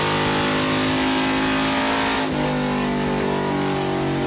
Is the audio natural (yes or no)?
yes